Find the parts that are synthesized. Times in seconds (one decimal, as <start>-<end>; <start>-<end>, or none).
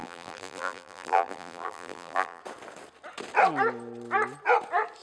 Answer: 0.0-2.4